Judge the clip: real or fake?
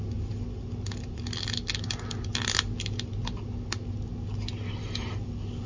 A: real